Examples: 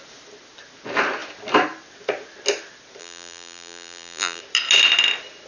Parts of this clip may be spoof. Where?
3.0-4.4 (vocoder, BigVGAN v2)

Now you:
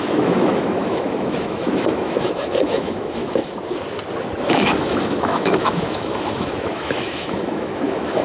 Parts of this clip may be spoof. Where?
0.0-3.4 (autoencoder, DAC-VAE); 4.4-8.2